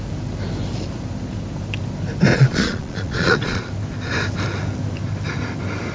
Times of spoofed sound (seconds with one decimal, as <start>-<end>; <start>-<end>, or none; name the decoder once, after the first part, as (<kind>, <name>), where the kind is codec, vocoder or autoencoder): 2.3-3.7 (vocoder, Vocos)